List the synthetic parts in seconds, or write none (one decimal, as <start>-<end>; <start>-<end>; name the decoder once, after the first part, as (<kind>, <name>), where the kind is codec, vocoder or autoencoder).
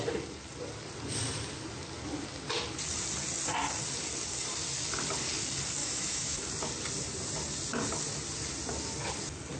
5.8-6.5 (autoencoder, DAC-VAE)